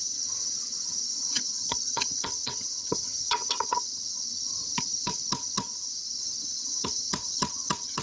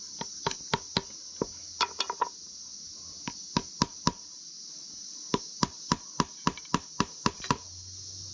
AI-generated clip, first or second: first